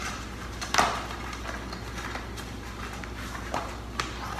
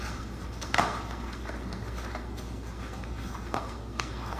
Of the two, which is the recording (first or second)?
first